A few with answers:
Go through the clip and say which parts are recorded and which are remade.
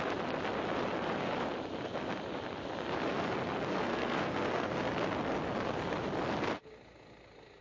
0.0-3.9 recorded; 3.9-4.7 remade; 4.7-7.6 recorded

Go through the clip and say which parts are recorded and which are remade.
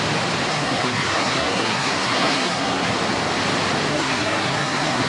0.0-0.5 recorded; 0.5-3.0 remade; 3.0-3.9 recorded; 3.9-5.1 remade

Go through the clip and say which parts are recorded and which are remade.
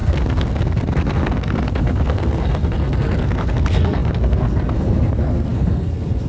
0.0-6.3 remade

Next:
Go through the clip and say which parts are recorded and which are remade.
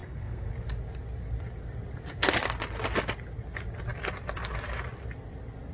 0.0-0.5 remade; 0.5-5.7 recorded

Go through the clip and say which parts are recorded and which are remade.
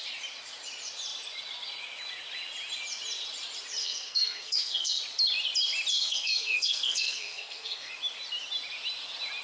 0.0-3.8 recorded; 3.8-5.0 remade; 5.0-5.9 recorded; 5.9-7.9 remade; 7.9-9.4 recorded